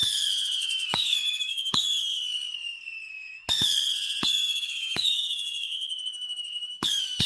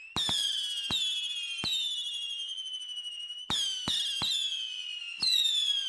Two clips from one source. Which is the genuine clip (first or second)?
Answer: second